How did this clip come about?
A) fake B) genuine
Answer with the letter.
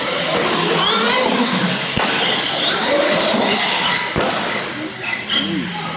B